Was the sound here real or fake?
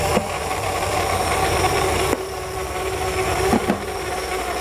real